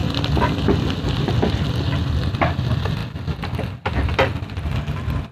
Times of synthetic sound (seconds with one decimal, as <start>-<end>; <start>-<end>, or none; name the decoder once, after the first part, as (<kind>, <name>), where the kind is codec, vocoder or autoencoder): none